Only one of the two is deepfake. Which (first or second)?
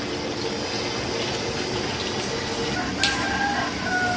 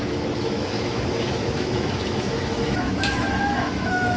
second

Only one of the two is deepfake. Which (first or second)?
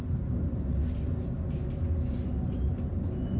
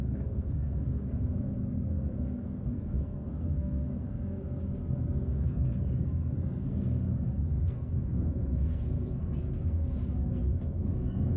second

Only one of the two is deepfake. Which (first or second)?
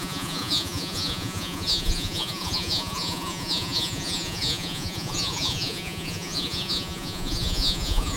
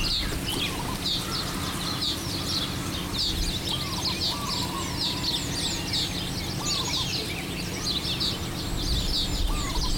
first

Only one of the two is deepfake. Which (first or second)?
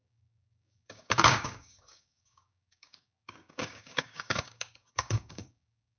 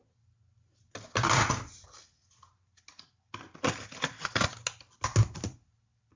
first